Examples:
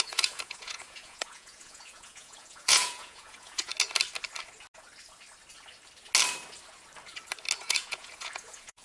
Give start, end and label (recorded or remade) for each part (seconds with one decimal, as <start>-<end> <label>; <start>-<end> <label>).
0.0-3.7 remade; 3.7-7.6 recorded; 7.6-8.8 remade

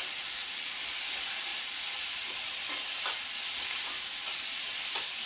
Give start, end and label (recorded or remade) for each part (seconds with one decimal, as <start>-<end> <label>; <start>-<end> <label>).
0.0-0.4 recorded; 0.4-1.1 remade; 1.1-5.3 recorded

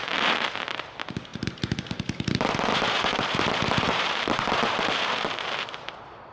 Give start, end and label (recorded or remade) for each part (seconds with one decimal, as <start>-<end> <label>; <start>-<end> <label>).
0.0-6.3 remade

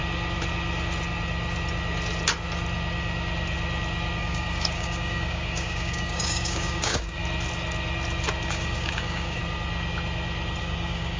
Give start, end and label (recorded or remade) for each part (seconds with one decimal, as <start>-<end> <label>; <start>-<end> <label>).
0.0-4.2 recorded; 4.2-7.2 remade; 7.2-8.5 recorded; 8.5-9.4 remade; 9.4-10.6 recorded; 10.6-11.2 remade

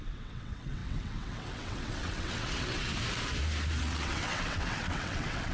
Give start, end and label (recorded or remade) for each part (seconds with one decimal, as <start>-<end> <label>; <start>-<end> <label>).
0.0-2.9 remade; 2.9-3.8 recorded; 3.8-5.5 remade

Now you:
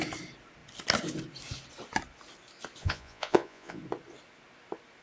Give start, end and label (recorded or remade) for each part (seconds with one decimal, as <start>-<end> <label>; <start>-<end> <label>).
0.0-2.8 recorded; 2.8-3.8 remade; 3.8-5.0 recorded

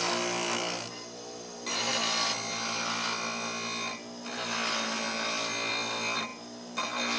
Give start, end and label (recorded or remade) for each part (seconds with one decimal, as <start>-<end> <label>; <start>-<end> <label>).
0.0-7.2 recorded

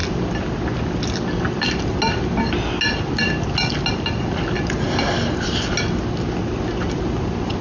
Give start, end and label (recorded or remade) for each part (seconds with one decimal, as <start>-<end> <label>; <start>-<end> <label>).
0.0-7.6 recorded